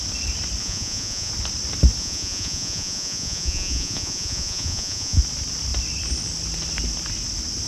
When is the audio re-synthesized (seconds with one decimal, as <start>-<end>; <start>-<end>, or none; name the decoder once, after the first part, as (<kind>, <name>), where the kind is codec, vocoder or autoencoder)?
0.6-1.3 (vocoder, Vocos); 2.0-5.2